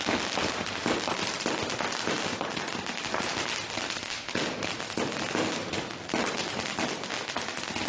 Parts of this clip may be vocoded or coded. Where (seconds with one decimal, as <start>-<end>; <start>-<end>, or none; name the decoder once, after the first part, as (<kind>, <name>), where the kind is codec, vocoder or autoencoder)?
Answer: none